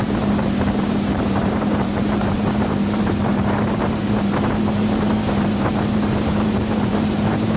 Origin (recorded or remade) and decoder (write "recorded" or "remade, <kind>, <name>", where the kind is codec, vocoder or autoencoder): remade, vocoder, BigVGAN v2